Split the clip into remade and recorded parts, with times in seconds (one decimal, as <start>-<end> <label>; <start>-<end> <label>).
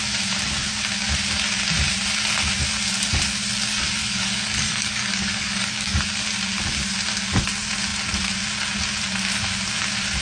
0.0-4.0 recorded; 4.0-6.0 remade; 6.0-10.2 recorded